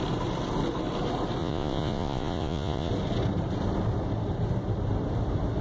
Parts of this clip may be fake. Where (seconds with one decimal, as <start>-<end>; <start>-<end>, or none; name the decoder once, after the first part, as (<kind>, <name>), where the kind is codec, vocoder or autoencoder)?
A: 1.4-2.9 (vocoder, Vocos)